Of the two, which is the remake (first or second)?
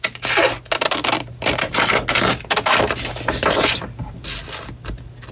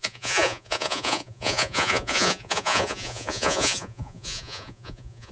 second